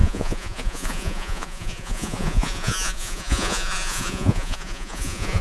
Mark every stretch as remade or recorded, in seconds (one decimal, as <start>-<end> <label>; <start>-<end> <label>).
0.0-5.4 remade